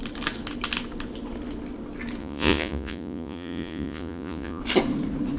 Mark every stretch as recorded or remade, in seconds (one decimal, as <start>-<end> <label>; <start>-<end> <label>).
0.0-2.2 recorded; 2.2-4.6 remade; 4.6-5.4 recorded